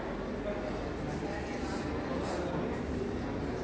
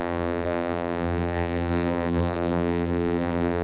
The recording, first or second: first